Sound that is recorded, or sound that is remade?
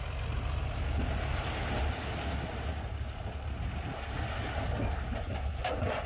recorded